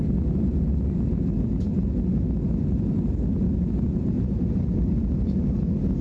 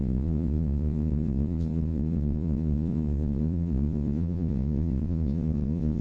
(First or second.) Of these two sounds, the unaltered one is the first